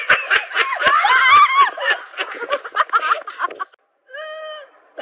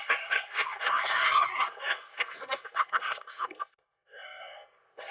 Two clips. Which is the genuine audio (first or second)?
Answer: first